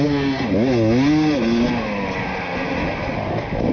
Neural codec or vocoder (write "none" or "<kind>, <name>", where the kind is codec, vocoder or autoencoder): none